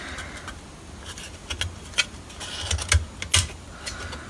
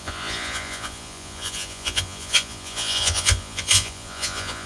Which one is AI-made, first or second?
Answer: second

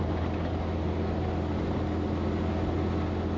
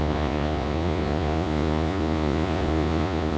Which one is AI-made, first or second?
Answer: second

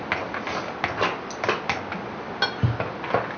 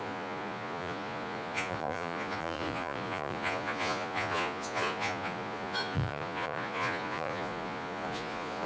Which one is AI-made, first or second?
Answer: second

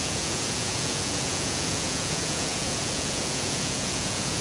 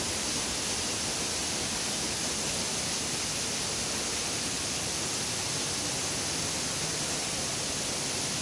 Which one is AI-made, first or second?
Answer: first